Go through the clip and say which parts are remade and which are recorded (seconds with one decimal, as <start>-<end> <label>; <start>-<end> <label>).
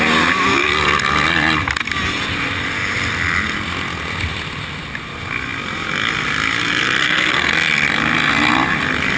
0.0-7.0 recorded; 7.0-7.5 remade; 7.5-9.2 recorded